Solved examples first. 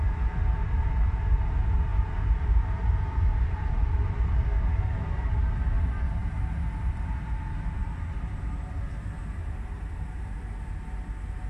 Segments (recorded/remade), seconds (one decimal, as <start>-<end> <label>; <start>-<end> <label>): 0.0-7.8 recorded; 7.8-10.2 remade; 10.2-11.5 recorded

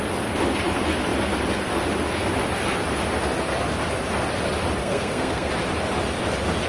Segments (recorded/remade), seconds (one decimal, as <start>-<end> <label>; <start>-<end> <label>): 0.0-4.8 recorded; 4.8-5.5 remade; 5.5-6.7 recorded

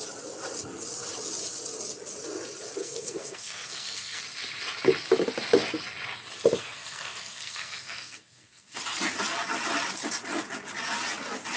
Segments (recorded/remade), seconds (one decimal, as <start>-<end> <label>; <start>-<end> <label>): 0.0-2.8 recorded; 2.8-4.2 remade; 4.2-6.6 recorded; 6.6-8.8 remade; 8.8-11.6 recorded

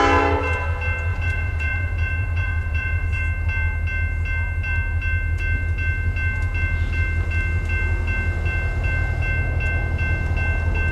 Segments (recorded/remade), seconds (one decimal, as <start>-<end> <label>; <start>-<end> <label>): 0.0-1.1 recorded; 1.1-3.2 remade; 3.2-10.9 recorded

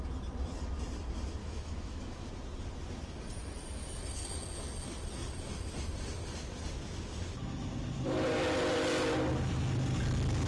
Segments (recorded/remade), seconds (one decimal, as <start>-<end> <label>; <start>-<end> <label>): 0.0-1.4 recorded; 1.4-2.3 remade; 2.3-10.5 recorded

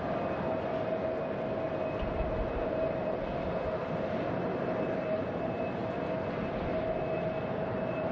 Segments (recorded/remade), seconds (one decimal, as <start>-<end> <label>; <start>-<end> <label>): 0.0-8.1 recorded